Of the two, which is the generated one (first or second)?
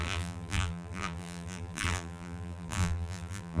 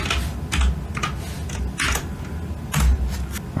first